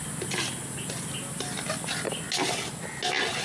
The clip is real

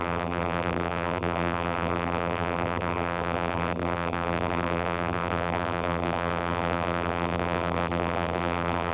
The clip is fake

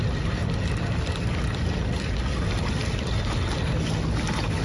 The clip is real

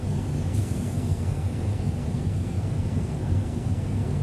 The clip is fake